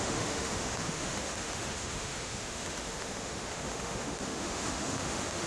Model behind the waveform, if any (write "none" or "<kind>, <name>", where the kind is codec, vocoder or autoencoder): autoencoder, DAC-VAE